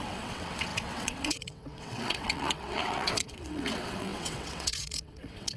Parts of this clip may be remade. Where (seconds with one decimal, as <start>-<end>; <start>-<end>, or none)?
0.0-5.6